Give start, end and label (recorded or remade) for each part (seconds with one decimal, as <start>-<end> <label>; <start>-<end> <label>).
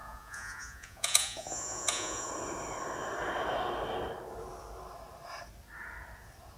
0.0-2.3 remade; 2.3-6.6 recorded